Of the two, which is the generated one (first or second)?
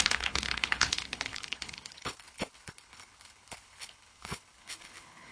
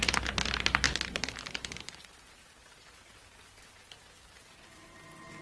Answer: first